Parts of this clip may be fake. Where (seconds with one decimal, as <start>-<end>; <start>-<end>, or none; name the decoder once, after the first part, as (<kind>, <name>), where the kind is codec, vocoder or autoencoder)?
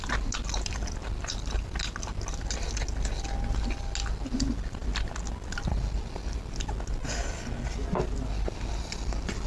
none